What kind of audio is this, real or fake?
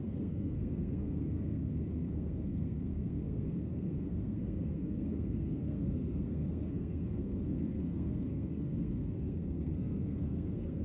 fake